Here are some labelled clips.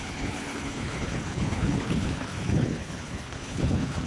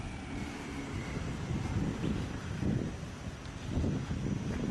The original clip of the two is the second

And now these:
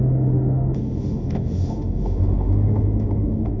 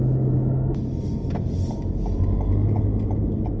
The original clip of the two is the second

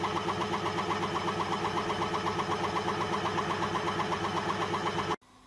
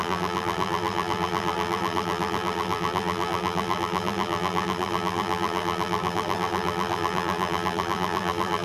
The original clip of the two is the first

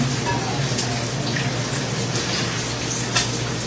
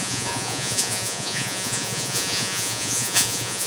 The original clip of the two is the first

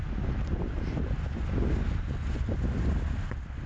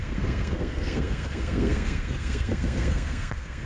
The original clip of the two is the first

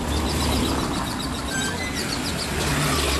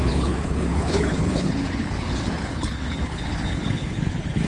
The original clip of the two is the first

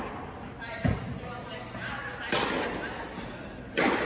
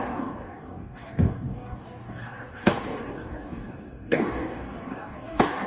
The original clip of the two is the first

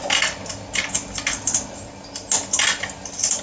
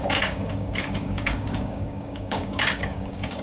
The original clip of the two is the first